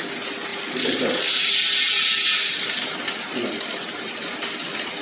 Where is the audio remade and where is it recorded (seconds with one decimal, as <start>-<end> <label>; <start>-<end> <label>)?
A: 0.0-5.0 recorded